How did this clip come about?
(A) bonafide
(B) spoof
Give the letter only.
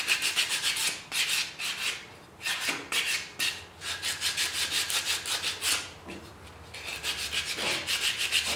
A